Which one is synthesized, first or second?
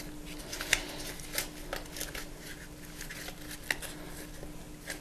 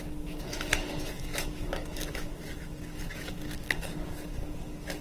second